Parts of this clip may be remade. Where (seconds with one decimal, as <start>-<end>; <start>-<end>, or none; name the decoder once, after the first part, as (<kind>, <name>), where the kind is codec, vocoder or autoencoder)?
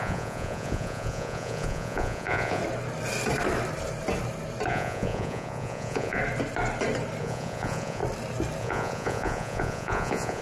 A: 0.0-2.6 (vocoder, Vocos); 4.7-6.2; 7.2-8.0; 8.6-10.4